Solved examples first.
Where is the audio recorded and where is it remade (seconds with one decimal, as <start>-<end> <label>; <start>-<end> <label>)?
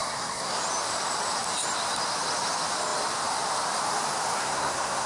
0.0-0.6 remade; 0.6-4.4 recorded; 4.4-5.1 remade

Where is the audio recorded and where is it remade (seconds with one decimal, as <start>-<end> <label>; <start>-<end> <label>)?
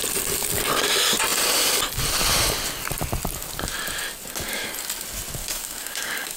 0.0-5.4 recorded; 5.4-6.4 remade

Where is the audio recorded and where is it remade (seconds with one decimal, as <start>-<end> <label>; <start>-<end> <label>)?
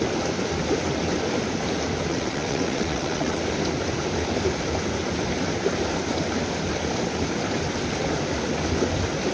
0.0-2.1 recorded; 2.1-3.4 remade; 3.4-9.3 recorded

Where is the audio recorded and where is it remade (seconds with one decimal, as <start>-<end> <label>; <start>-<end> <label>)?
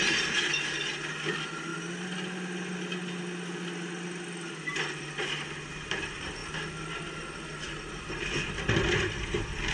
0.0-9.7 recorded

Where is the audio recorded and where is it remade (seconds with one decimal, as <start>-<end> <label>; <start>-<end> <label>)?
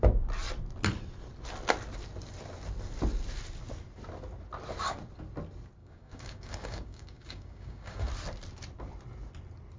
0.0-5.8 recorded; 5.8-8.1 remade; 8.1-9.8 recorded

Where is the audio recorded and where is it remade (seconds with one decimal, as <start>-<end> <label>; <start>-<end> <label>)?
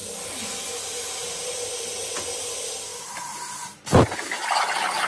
0.0-0.4 recorded; 0.4-1.8 remade; 1.8-2.9 recorded; 2.9-4.4 remade; 4.4-5.1 recorded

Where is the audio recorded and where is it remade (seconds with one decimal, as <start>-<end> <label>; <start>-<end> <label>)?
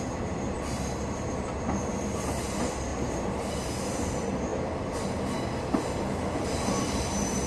0.0-2.9 recorded; 2.9-3.5 remade; 3.5-7.5 recorded